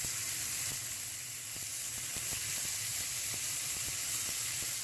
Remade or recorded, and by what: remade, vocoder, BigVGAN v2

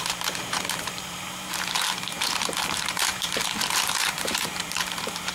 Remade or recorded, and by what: remade, vocoder, BigVGAN v2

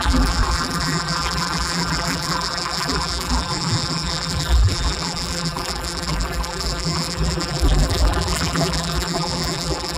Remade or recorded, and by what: remade, vocoder, BigVGAN v2